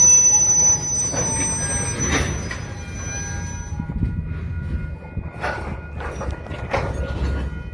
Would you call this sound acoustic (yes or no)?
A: yes